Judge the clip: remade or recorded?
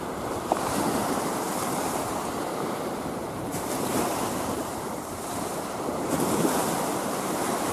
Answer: remade